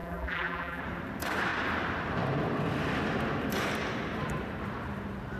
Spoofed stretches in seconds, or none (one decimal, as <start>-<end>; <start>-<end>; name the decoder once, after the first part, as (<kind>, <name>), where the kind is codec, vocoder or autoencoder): 0.0-0.8 (vocoder, BigVGAN v2)